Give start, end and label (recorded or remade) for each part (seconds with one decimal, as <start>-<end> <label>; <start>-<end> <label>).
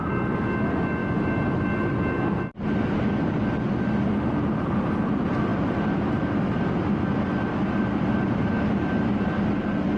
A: 0.0-10.0 recorded